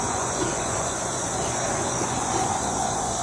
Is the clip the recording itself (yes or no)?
no